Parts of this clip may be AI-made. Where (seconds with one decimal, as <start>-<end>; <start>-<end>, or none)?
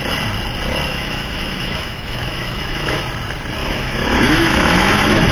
0.9-3.0; 3.6-5.3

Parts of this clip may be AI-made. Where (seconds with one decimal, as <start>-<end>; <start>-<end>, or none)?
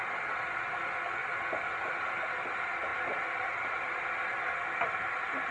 none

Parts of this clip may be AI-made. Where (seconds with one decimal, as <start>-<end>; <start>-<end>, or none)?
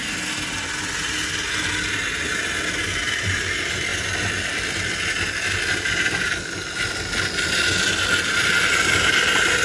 none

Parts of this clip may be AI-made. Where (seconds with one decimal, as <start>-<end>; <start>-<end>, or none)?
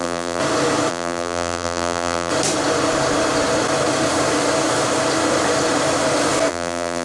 0.0-0.4; 0.9-2.3; 6.5-7.0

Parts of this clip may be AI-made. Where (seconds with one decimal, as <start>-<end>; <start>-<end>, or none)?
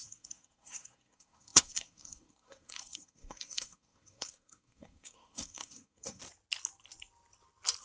0.0-6.2